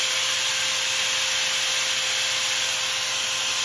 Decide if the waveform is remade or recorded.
recorded